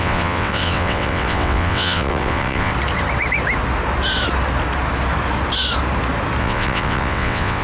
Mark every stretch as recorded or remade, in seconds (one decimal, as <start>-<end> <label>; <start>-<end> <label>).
0.0-2.7 remade; 2.7-6.4 recorded; 6.4-7.6 remade

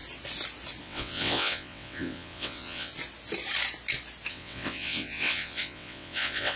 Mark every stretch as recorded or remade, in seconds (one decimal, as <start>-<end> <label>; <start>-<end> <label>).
0.0-0.8 recorded; 0.8-2.9 remade; 2.9-4.3 recorded; 4.3-6.6 remade

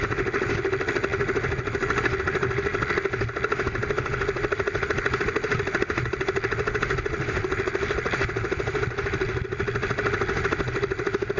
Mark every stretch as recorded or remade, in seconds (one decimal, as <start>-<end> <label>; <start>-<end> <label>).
0.0-11.4 recorded

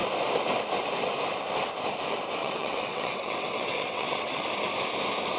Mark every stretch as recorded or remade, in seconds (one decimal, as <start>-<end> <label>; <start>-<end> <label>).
0.0-2.4 recorded; 2.4-4.4 remade; 4.4-5.4 recorded

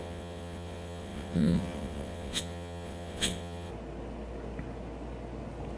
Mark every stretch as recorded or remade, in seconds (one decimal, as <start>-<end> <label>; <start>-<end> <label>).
0.0-3.7 remade; 3.7-5.8 recorded

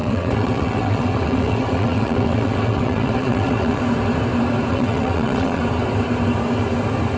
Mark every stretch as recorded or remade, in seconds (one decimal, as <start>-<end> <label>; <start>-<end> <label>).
0.0-3.8 remade; 3.8-4.7 recorded; 4.7-5.6 remade; 5.6-7.2 recorded